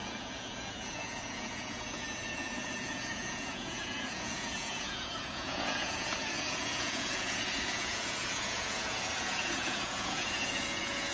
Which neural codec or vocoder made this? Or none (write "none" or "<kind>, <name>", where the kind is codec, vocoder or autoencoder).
vocoder, Vocos